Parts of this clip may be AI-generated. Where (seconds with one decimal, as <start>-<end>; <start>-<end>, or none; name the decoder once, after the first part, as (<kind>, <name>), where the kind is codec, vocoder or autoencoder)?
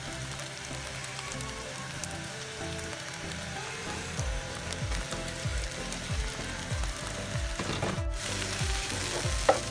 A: 0.0-9.0 (vocoder, BigVGAN v2)